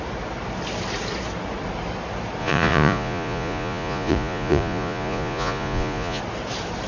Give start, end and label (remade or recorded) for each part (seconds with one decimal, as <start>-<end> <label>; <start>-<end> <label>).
0.0-2.4 recorded; 2.4-6.2 remade; 6.2-6.9 recorded